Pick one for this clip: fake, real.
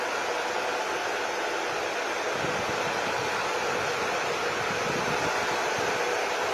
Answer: real